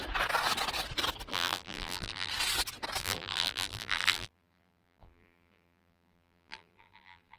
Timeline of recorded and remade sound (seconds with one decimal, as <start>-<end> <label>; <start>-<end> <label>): 0.0-1.3 recorded; 1.3-2.3 remade; 2.3-3.0 recorded; 3.0-7.4 remade